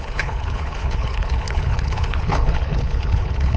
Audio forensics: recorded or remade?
remade